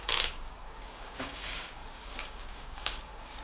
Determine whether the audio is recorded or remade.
remade